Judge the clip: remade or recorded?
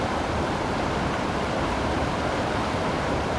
remade